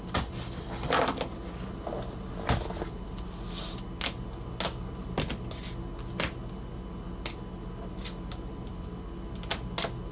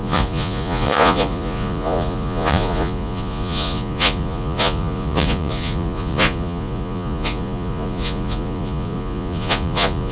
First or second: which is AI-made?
second